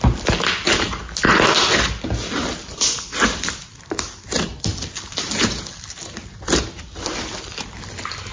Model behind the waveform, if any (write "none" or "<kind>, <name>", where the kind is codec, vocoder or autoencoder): none